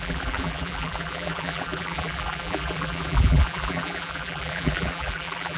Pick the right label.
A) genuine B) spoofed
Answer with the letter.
B